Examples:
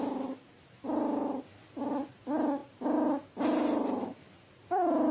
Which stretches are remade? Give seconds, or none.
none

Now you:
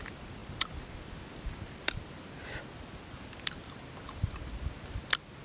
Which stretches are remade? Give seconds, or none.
none

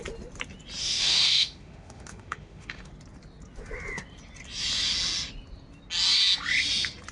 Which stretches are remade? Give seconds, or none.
0.8-2.9 (autoencoder, DAC-VAE)

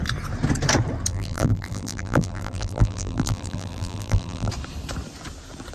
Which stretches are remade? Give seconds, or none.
1.1-4.5 (vocoder, BigVGAN v2)

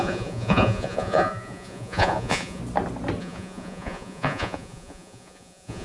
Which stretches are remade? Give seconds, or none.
0.0-2.6 (vocoder, Vocos); 3.2-5.8

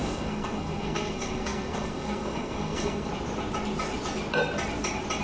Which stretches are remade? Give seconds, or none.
0.0-3.1 (codec, SNAC)

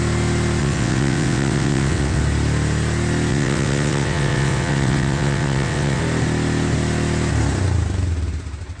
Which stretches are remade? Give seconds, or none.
0.6-2.2 (vocoder, WaveNeXt); 3.3-6.0

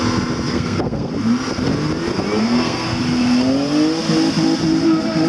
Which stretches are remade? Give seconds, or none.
0.5-1.1 (codec, SNAC); 2.4-3.0